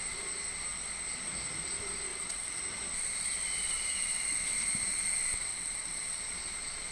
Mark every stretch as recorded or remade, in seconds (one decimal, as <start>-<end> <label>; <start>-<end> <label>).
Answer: 0.0-2.1 recorded; 2.1-2.6 remade; 2.6-5.5 recorded; 5.5-6.2 remade; 6.2-6.9 recorded